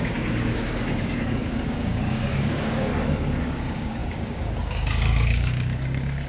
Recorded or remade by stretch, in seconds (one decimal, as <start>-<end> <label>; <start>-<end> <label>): 0.0-2.9 remade; 2.9-3.4 recorded; 3.4-6.3 remade